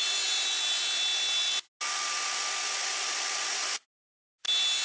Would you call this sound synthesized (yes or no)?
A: no